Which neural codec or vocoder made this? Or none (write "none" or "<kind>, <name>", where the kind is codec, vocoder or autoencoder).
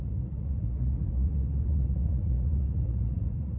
vocoder, Vocos